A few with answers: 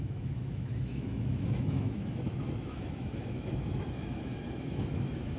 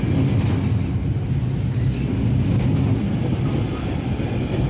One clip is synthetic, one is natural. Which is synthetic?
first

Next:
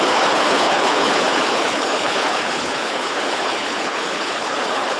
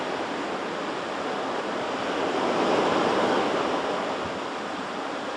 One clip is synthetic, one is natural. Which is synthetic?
first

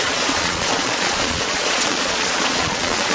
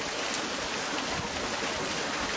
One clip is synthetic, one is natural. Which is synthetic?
first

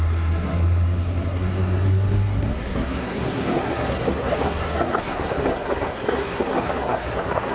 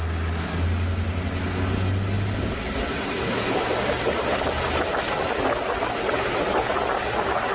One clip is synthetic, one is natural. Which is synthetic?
first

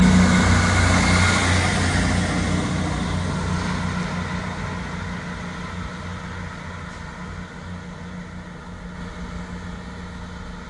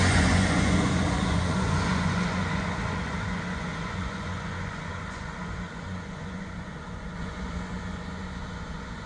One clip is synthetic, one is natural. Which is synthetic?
second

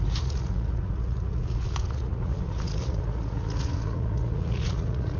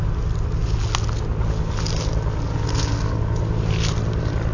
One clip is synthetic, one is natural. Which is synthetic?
first